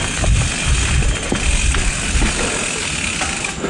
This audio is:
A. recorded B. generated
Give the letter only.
A